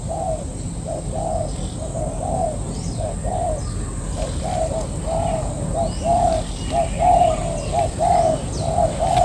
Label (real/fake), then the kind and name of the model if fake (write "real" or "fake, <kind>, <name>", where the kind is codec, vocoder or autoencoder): real